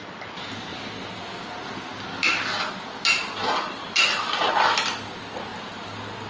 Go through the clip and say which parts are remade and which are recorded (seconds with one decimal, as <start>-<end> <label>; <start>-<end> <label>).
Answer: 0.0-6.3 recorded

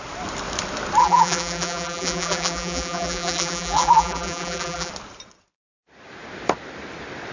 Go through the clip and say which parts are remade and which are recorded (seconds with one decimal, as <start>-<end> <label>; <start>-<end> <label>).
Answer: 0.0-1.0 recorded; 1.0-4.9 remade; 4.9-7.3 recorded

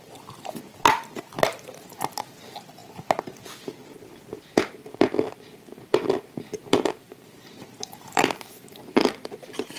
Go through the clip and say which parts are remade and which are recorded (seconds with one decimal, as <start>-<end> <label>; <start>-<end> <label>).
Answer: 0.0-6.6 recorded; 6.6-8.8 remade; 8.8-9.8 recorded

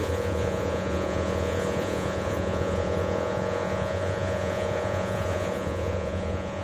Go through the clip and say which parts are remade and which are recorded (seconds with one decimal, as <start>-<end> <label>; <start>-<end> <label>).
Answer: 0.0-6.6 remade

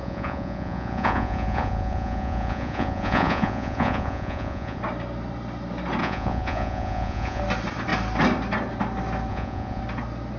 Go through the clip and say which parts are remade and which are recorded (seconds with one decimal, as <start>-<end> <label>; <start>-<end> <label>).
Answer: 0.0-4.8 remade; 4.8-6.0 recorded; 6.0-7.4 remade; 7.4-9.3 recorded; 9.3-9.8 remade; 9.8-10.4 recorded

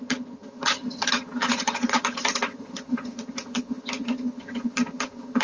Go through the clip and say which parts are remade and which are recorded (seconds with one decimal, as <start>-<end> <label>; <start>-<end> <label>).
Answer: 0.0-5.4 remade